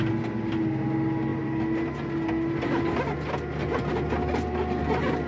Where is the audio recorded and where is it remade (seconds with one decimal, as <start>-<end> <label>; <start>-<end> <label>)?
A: 0.0-5.3 recorded